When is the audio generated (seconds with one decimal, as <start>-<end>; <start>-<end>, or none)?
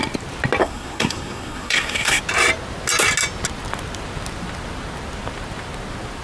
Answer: 0.6-2.2